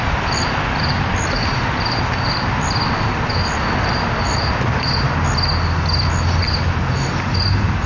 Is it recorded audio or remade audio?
recorded